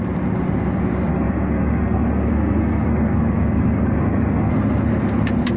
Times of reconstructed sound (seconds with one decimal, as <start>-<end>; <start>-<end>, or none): 1.1-4.5